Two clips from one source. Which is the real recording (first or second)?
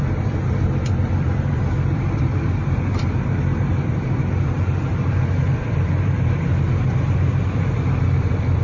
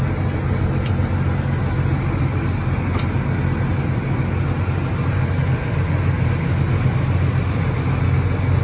second